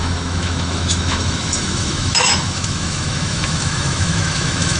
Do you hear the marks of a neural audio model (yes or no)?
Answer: yes